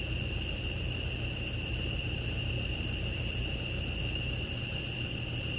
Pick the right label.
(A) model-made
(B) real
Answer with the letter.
B